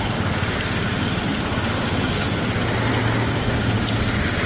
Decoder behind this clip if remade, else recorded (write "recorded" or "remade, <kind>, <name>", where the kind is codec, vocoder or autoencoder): recorded